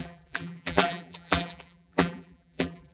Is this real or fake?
fake